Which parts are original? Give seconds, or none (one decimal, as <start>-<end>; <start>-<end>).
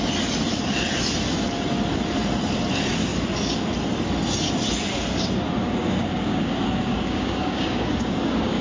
0.0-5.6